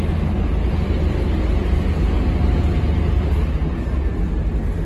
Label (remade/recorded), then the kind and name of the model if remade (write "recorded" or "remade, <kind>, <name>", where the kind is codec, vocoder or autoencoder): recorded